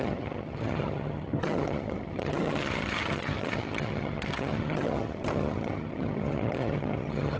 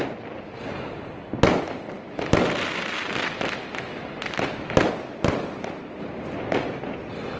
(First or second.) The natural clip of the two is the second